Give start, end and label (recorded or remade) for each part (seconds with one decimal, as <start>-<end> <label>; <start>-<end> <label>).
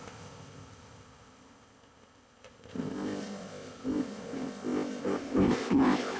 0.0-6.2 remade